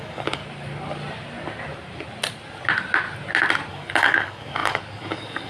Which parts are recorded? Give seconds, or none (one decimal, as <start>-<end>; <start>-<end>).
0.4-3.7